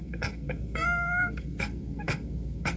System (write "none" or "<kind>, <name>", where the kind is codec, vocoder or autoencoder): codec, SNAC